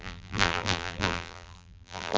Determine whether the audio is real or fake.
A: fake